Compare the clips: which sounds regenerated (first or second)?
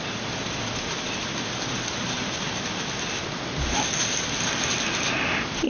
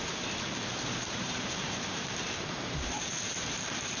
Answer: second